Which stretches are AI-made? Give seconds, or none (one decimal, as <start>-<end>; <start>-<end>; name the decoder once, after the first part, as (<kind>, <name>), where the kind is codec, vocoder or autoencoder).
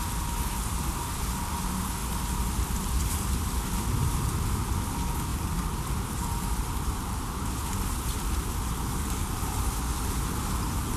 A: 2.0-3.3 (vocoder, BigVGAN v2); 5.3-7.2